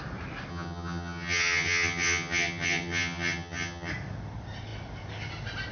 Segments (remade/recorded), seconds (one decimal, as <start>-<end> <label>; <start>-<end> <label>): 0.0-0.5 recorded; 0.5-3.9 remade; 3.9-5.7 recorded